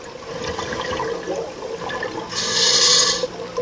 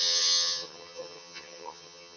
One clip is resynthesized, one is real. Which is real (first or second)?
first